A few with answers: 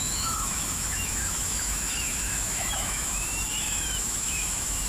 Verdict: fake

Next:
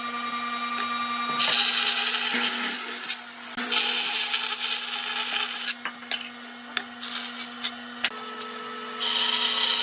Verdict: real